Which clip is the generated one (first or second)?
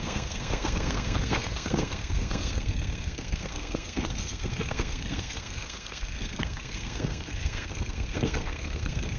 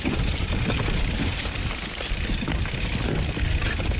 first